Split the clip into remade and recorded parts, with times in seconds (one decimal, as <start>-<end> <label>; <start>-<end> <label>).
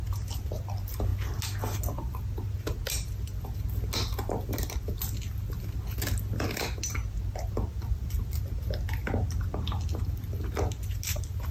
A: 0.0-11.5 recorded